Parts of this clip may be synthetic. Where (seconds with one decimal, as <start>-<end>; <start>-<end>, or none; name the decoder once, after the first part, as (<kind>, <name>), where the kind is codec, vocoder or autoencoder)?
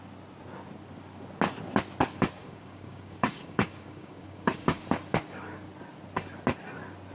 2.4-4.8 (codec, DAC)